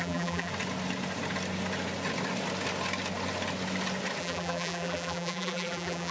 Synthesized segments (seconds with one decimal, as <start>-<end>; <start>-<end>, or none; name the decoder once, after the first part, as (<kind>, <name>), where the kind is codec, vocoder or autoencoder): 0.0-0.5 (vocoder, BigVGAN v2); 4.2-6.1